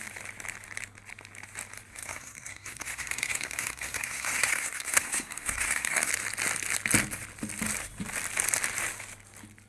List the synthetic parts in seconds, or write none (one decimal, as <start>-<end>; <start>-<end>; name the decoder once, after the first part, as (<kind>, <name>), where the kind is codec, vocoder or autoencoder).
1.9-6.1 (codec, SNAC)